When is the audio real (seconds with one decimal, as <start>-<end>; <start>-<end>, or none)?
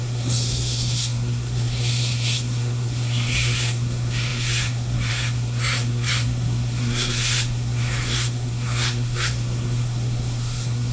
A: none